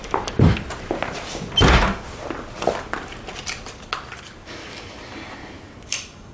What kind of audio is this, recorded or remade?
recorded